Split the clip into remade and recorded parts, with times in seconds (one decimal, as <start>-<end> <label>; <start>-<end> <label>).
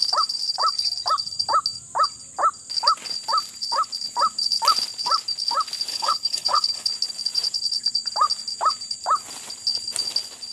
0.0-5.9 recorded; 5.9-6.9 remade; 6.9-10.5 recorded